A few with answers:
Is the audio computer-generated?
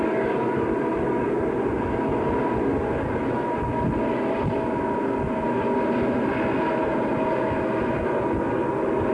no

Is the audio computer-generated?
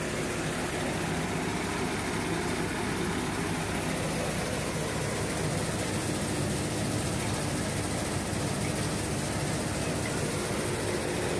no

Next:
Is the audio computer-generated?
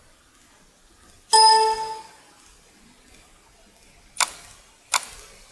no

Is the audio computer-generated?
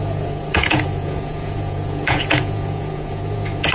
yes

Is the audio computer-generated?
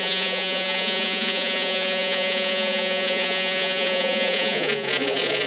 yes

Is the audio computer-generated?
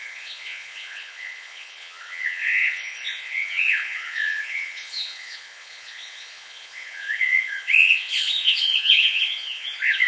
yes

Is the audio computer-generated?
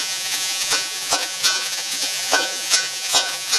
yes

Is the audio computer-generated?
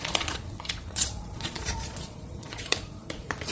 yes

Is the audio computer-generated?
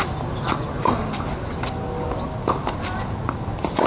no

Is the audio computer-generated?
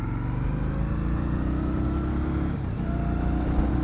no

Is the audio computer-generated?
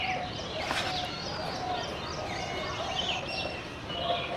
no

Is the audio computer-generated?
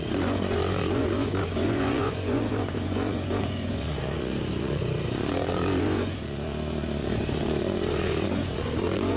yes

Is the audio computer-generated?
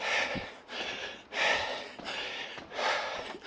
no